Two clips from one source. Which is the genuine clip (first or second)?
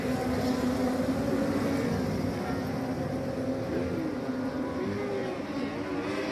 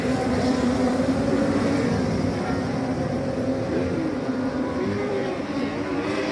first